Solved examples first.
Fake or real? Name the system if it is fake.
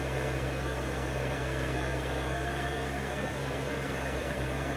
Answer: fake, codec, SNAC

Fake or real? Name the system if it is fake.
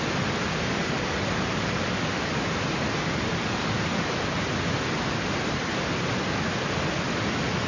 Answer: real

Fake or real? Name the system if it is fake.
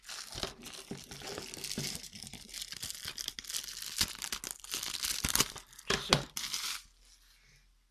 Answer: real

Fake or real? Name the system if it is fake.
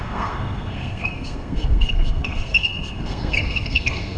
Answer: fake, codec, SNAC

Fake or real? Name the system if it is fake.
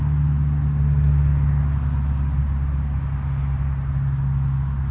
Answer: real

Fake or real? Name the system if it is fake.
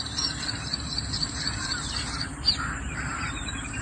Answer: fake, vocoder, BigVGAN v2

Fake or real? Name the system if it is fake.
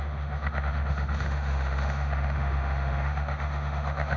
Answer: fake, autoencoder, DAC-VAE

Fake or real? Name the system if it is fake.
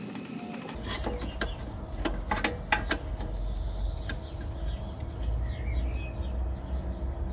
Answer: real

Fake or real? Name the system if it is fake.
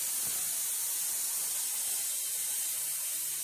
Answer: real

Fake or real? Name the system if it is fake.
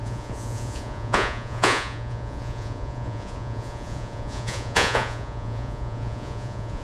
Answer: fake, vocoder, Vocos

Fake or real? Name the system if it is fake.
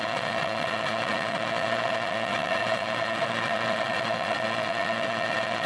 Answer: fake, vocoder, Vocos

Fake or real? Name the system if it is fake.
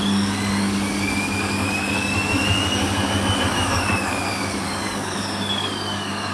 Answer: fake, codec, DAC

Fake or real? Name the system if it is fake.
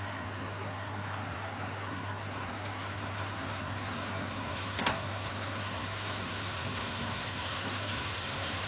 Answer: fake, codec, SNAC